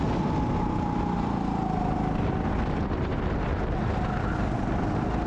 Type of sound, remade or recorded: recorded